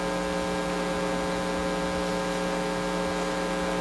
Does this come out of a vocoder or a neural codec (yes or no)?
no